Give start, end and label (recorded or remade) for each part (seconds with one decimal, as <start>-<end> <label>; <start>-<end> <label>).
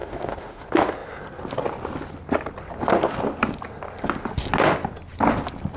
0.0-0.6 remade; 0.6-5.8 recorded